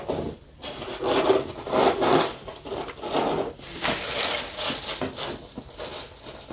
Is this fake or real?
fake